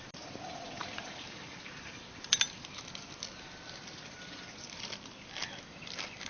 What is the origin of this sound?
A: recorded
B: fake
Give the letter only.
A